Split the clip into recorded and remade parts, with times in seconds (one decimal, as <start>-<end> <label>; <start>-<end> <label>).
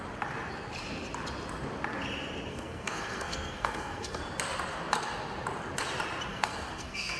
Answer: 0.0-2.5 recorded; 2.5-4.2 remade; 4.2-6.3 recorded; 6.3-7.2 remade